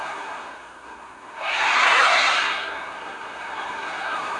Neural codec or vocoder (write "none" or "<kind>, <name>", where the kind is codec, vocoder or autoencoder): codec, SNAC